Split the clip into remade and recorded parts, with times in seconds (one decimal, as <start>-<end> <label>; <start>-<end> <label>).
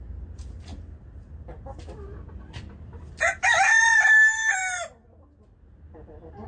0.0-6.5 recorded